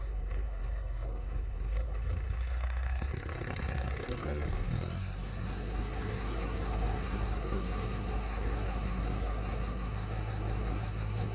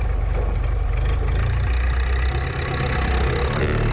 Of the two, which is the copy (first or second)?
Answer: first